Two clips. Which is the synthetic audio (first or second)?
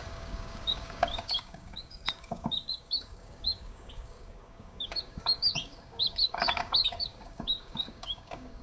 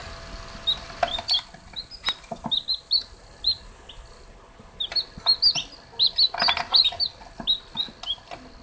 first